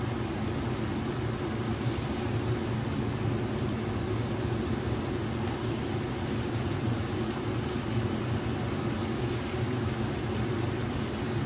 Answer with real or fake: real